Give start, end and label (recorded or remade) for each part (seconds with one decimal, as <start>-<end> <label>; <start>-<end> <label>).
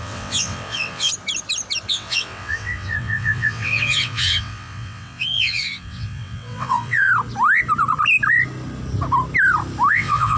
0.0-1.1 remade; 1.1-1.9 recorded; 1.9-7.1 remade; 7.1-9.9 recorded; 9.9-10.4 remade